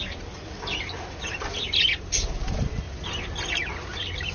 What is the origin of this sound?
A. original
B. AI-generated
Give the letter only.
A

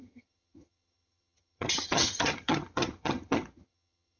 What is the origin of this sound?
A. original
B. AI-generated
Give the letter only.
B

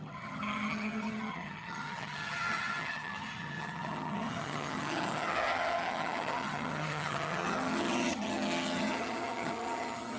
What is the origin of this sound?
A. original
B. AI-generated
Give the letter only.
B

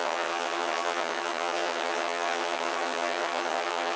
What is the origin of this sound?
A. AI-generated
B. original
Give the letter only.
A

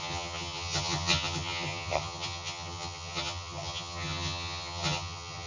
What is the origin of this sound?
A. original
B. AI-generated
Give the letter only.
B